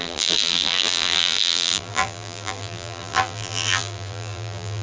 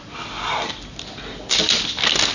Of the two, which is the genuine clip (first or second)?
second